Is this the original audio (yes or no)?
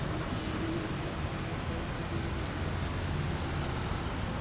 yes